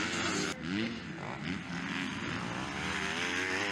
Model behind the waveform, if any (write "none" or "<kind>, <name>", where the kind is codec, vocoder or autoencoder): none